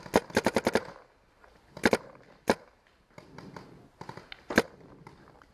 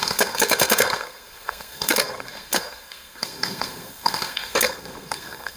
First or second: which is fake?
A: second